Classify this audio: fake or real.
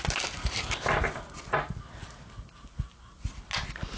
real